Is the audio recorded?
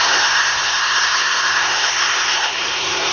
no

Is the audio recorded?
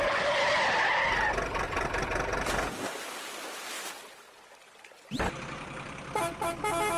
yes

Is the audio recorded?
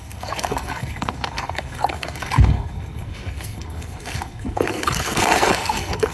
no